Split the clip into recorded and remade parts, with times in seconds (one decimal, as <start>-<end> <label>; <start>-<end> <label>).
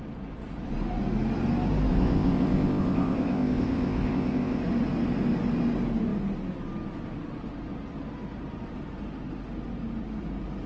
0.0-1.9 recorded; 1.9-4.6 remade; 4.6-10.7 recorded